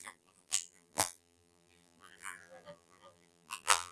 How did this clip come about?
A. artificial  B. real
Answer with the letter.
A